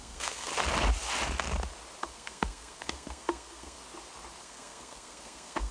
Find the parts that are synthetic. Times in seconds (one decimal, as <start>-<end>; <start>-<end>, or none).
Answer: 0.0-0.5; 2.0-3.8; 4.4-5.7